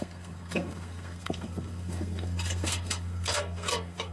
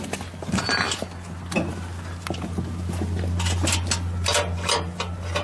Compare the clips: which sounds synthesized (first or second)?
first